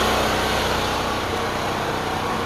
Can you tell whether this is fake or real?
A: real